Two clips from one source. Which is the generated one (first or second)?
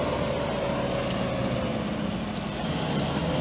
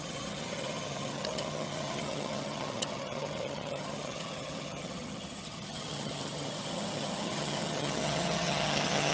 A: second